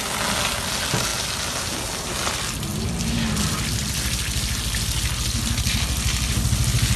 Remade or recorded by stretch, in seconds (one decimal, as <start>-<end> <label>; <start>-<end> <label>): 0.0-7.0 recorded